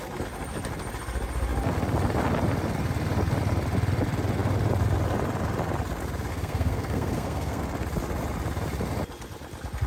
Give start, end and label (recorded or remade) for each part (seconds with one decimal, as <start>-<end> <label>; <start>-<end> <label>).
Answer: 0.0-6.3 recorded; 6.3-7.6 remade; 7.6-9.9 recorded